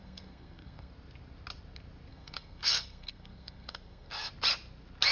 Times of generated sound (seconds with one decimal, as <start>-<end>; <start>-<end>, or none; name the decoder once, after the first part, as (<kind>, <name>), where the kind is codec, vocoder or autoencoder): 0.0-0.9 (codec, SNAC); 2.1-4.3